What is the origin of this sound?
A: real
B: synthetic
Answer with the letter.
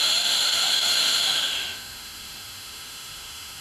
B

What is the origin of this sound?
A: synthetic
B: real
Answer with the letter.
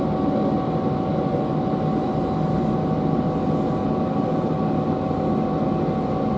B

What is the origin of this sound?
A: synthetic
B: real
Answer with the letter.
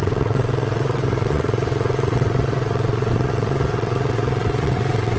A